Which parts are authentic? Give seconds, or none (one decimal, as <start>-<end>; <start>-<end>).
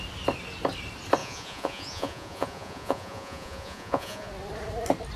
0.0-1.2; 4.3-5.2